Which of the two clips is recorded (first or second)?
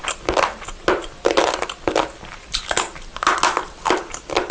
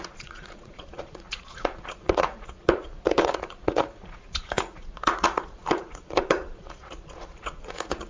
first